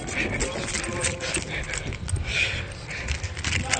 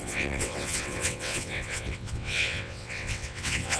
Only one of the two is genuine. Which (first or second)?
first